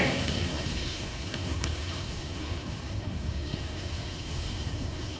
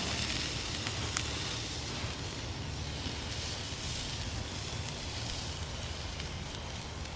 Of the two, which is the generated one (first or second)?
first